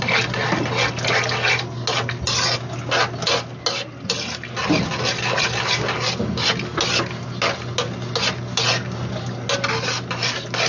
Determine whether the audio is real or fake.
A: real